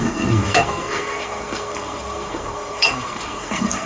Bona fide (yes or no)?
no